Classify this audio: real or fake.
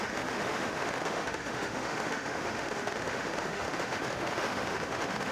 fake